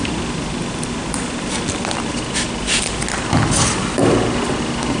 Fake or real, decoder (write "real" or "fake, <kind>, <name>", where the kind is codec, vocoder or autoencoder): real